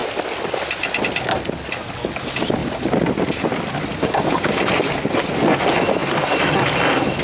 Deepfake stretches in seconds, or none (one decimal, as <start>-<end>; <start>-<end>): 3.9-4.7